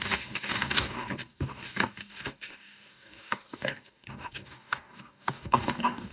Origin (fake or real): fake